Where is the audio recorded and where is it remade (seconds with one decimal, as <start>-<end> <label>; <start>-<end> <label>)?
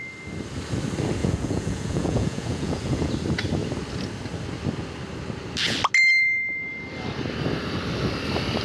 0.0-1.2 recorded; 1.2-3.1 remade; 3.1-8.6 recorded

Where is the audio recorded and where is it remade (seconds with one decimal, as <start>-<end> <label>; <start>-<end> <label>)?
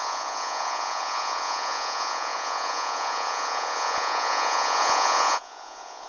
0.0-6.1 remade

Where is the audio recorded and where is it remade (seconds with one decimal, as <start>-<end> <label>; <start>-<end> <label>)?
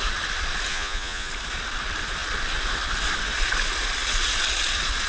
0.0-0.7 recorded; 0.7-1.3 remade; 1.3-5.1 recorded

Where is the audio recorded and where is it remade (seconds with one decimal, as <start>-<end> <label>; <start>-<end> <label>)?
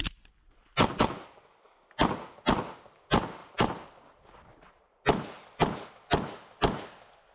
0.0-7.3 recorded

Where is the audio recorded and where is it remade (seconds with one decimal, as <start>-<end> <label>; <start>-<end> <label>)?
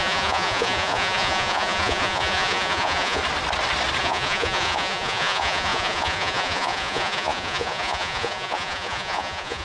0.0-3.2 remade; 3.2-4.0 recorded; 4.0-9.6 remade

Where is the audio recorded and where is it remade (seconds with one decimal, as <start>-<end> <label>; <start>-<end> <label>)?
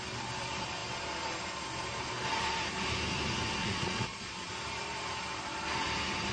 0.0-3.6 recorded; 3.6-4.5 remade; 4.5-6.3 recorded